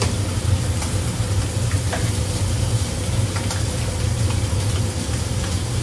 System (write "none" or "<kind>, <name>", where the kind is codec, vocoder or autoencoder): none